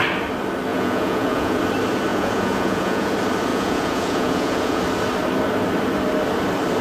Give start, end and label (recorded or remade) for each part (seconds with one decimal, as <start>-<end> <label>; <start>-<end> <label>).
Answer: 0.0-0.7 recorded; 0.7-1.6 remade; 1.6-2.1 recorded; 2.1-3.1 remade; 3.1-3.5 recorded; 3.5-4.8 remade; 4.8-6.8 recorded